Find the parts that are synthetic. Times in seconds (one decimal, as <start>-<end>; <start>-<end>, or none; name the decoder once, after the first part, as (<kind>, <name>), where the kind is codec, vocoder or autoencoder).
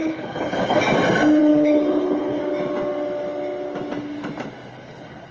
0.0-0.8 (codec, HILCodec); 1.4-2.4; 4.7-5.3